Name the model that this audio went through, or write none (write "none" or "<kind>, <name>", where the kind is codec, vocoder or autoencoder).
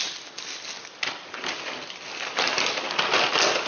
none